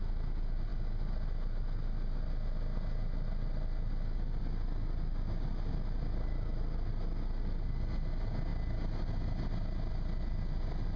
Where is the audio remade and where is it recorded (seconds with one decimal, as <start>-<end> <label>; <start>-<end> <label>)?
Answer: 0.0-11.0 recorded